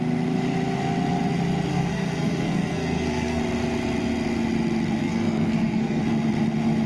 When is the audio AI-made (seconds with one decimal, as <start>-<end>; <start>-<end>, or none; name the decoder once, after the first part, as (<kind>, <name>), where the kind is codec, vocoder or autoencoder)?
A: 1.7-3.4 (codec, SNAC); 5.0-6.0